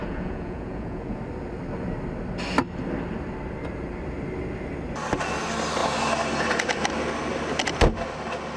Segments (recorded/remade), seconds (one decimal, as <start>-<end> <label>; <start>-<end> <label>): 0.0-1.2 remade; 1.2-8.6 recorded